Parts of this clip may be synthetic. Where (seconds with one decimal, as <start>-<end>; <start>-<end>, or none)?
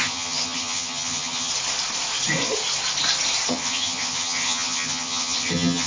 0.0-1.5; 3.5-5.9